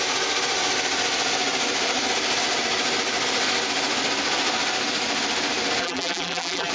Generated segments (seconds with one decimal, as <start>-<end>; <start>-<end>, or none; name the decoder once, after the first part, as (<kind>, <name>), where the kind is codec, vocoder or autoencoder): 5.8-6.7 (vocoder, BigVGAN v2)